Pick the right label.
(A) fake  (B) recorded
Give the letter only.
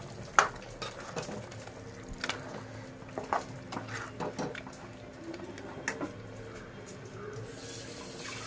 B